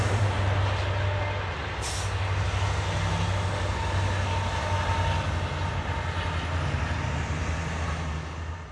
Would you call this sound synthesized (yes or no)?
no